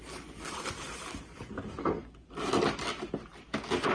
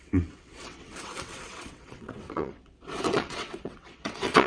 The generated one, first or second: second